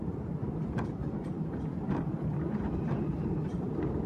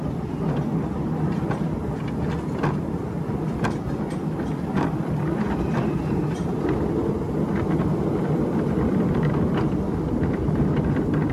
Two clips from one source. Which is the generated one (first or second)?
first